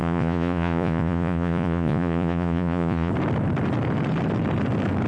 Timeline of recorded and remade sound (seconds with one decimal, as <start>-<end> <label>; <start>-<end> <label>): 0.0-3.1 remade; 3.1-5.1 recorded